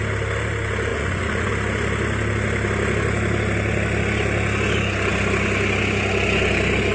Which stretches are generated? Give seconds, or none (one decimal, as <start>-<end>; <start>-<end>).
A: 0.9-1.5